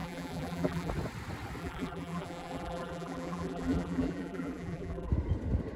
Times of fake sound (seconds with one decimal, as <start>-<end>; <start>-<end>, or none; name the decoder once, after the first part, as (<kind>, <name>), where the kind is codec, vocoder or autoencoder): 0.0-0.9 (vocoder, BigVGAN v2); 1.6-5.1